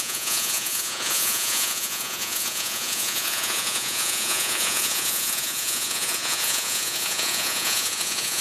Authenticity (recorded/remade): remade